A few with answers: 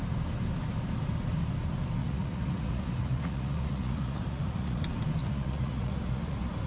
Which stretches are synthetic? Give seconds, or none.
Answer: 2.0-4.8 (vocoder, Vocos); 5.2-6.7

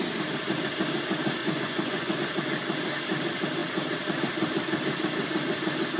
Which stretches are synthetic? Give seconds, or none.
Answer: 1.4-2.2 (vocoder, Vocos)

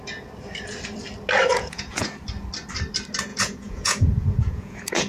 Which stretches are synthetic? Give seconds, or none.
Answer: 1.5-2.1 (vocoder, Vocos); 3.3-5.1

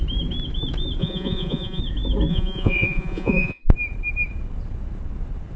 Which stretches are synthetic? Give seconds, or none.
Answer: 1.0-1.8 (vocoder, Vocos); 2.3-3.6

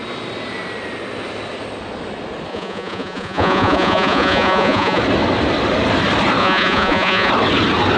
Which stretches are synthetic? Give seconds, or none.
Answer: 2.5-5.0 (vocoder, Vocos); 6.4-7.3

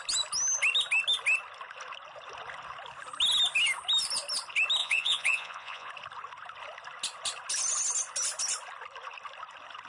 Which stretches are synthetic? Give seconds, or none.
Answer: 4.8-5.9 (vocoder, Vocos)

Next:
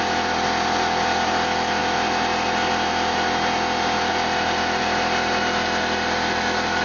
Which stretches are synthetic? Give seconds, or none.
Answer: none

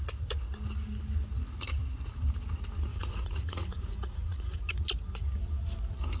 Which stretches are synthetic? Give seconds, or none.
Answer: 2.9-4.6 (vocoder, Vocos)